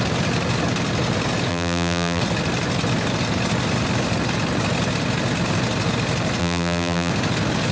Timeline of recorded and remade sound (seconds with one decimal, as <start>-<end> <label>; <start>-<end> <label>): 0.0-1.5 recorded; 1.5-2.2 remade; 2.2-6.4 recorded; 6.4-7.1 remade; 7.1-7.7 recorded